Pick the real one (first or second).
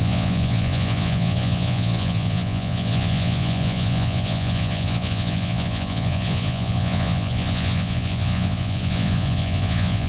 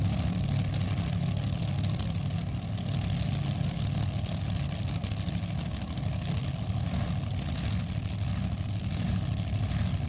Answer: second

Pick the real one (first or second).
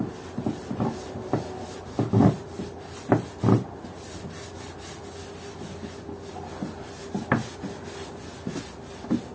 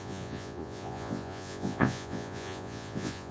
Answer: first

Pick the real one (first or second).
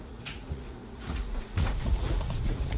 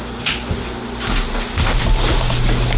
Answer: second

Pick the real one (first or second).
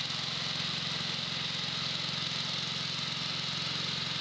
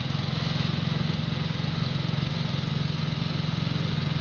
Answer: first